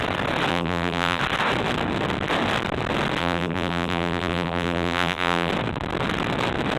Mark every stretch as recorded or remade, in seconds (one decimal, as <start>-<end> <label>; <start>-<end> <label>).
0.0-0.5 recorded; 0.5-1.2 remade; 1.2-3.2 recorded; 3.2-5.5 remade; 5.5-6.8 recorded